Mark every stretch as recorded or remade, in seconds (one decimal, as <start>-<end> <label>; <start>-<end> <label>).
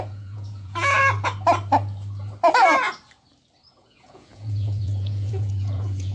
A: 0.0-1.0 remade; 1.0-3.7 recorded; 3.7-6.1 remade